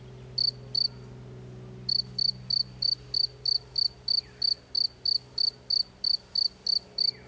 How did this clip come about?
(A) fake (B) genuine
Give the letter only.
B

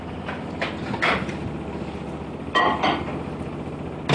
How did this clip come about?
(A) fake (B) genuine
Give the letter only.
B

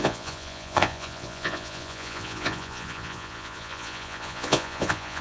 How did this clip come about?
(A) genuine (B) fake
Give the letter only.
B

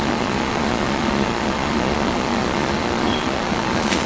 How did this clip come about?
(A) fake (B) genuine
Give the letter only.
A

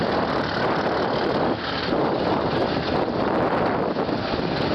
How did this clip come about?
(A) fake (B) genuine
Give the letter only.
B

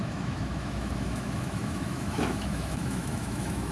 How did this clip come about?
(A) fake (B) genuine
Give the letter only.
A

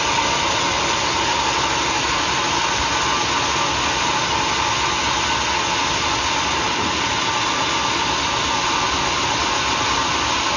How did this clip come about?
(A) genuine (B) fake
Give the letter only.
A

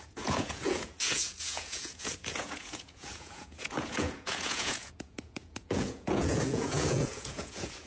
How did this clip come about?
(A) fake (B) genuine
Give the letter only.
A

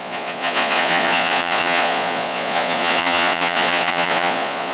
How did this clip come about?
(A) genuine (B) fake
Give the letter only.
B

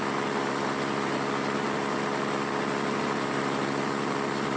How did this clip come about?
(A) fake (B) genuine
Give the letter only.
B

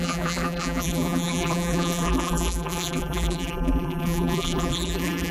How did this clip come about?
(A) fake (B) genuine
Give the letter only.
A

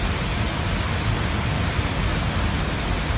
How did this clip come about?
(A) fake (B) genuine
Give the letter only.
B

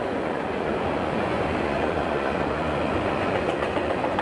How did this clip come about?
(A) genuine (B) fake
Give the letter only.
B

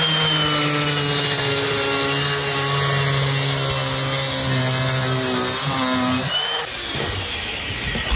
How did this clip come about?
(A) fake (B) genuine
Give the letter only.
B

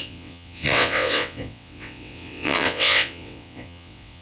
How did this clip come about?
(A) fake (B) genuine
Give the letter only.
A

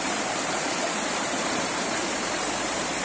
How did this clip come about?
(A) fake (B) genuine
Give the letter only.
A